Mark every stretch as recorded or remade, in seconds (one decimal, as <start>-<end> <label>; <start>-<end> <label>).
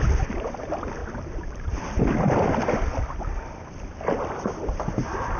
0.0-1.0 recorded; 1.0-1.8 remade; 1.8-5.4 recorded